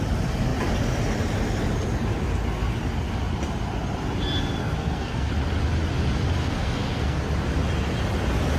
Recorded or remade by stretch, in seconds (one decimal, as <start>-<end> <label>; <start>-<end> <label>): 0.0-4.6 recorded; 4.6-5.3 remade; 5.3-6.4 recorded; 6.4-7.2 remade; 7.2-8.6 recorded

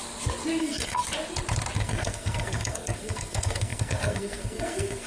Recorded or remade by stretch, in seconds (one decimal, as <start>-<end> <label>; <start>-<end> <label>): 0.0-0.6 recorded; 0.6-1.0 remade; 1.0-1.8 recorded; 1.8-5.1 remade

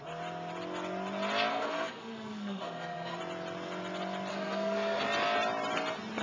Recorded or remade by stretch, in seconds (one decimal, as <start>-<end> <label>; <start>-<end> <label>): 0.0-1.5 recorded; 1.5-3.2 remade; 3.2-4.3 recorded; 4.3-5.0 remade; 5.0-6.2 recorded

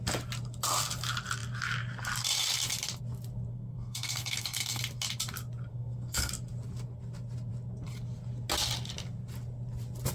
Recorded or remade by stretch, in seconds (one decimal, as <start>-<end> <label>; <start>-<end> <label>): 0.0-3.5 recorded; 3.5-4.8 remade; 4.8-5.7 recorded; 5.7-6.3 remade; 6.3-10.1 recorded